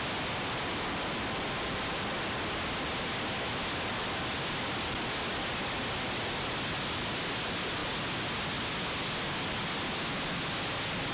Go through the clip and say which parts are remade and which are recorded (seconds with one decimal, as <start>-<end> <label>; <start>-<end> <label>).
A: 0.0-11.1 recorded